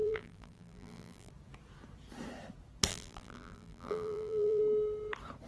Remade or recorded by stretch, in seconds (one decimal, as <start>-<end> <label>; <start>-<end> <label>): 0.0-1.3 remade; 1.3-2.9 recorded; 2.9-4.6 remade; 4.6-5.5 recorded